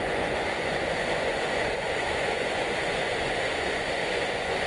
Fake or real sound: fake